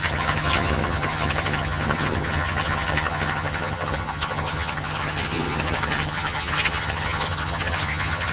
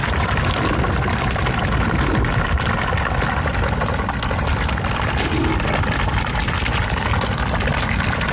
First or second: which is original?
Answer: second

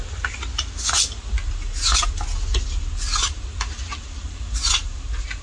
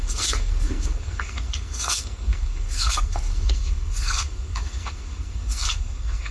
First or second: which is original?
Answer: first